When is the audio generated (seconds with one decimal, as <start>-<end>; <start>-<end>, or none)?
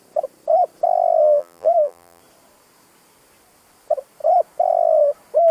1.2-2.2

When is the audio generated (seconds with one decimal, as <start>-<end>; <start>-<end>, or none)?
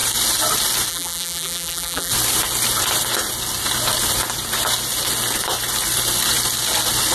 0.9-2.1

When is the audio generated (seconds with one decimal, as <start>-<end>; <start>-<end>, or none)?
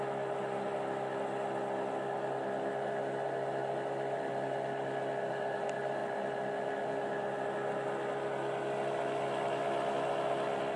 none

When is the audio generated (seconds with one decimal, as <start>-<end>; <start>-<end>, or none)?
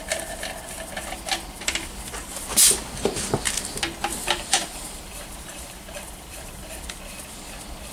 4.2-6.8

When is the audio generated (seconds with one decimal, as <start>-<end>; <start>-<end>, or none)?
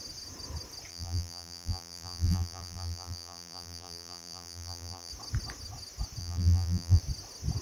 0.9-5.1; 6.2-7.0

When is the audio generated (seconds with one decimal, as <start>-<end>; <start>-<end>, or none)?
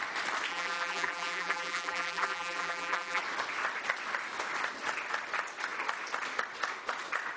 0.5-3.2